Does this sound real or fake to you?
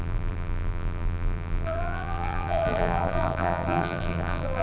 fake